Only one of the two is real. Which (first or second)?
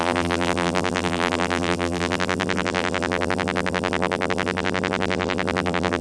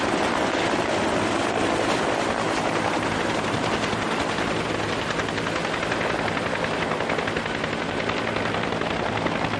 second